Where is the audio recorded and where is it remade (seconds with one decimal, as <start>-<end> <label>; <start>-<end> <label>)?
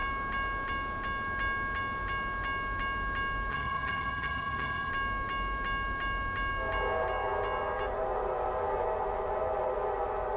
0.0-3.5 recorded; 3.5-4.9 remade; 4.9-10.4 recorded